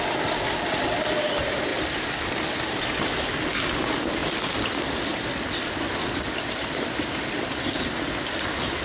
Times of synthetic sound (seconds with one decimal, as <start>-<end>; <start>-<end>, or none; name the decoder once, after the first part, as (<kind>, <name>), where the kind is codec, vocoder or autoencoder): none